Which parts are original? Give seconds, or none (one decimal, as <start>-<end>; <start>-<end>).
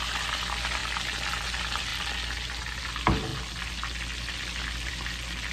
0.0-5.5